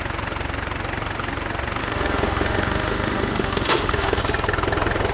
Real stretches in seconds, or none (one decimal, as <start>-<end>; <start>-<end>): 0.0-1.8; 4.2-5.1